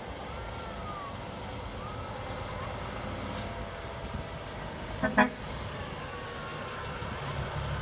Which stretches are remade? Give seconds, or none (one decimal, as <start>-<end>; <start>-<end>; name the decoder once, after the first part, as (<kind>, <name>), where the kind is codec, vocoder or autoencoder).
none